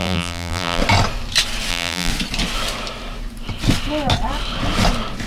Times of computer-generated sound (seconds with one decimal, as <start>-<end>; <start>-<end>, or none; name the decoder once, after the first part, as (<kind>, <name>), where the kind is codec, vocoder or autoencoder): 0.0-0.8 (vocoder, BigVGAN v2); 1.7-2.1